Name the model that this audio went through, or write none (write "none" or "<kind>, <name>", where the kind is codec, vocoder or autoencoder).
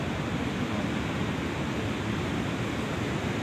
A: none